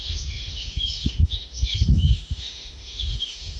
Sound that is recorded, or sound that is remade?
remade